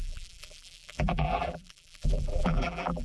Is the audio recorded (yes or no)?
no